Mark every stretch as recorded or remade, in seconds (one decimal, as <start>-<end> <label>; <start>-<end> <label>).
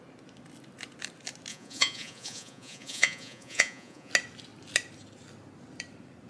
0.0-1.5 recorded; 1.5-4.1 remade; 4.1-6.3 recorded